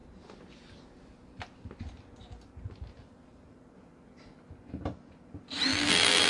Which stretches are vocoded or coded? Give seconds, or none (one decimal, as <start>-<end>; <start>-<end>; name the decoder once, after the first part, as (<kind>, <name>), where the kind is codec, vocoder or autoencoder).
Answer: 5.7-6.3 (vocoder, BigVGAN v2)